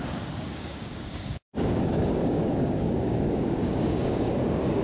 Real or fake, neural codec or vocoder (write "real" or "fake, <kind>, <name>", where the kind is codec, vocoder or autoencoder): fake, codec, DAC